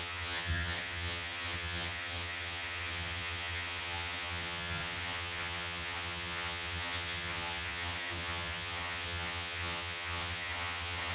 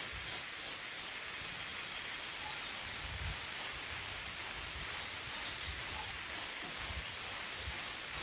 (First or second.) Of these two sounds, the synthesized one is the first